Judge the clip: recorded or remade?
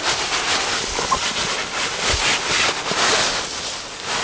recorded